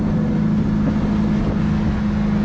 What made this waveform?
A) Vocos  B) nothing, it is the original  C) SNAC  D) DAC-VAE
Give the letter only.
B